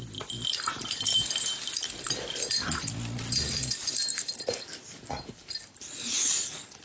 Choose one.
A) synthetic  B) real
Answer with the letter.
B